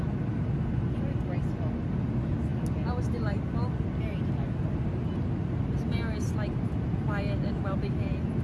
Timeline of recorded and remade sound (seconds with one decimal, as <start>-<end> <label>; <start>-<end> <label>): 0.0-8.4 recorded